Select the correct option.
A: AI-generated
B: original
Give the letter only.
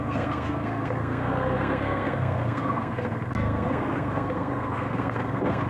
A